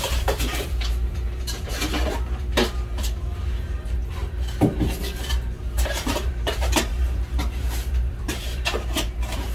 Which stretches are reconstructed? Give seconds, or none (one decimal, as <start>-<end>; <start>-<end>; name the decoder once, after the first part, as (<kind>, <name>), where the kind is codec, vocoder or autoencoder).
0.0-4.0 (vocoder, BigVGAN v2); 5.0-9.5